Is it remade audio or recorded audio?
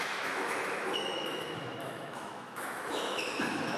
remade